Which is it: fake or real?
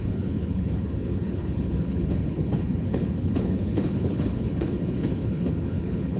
fake